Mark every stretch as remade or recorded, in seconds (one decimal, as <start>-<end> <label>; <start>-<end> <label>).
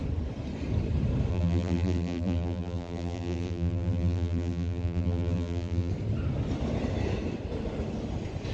0.0-1.3 recorded; 1.3-5.9 remade; 5.9-8.5 recorded